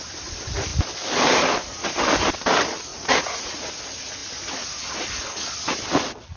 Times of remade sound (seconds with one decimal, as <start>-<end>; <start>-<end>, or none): 2.9-3.7